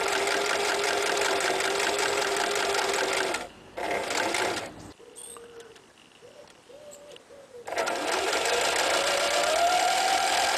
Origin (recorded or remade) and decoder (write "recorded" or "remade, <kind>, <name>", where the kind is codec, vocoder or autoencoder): recorded